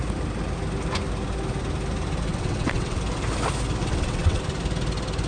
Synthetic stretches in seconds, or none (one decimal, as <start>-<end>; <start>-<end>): 2.3-3.0; 3.8-4.4